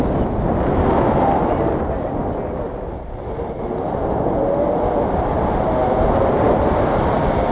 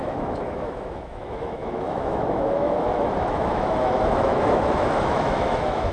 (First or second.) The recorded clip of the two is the first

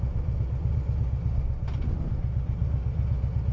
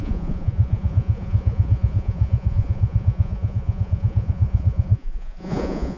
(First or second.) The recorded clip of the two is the first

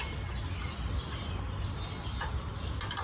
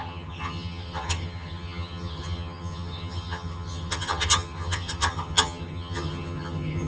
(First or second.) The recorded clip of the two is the first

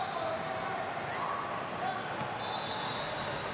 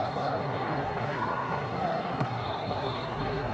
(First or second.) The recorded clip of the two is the first